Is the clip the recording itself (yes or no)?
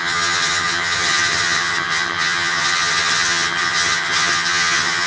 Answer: no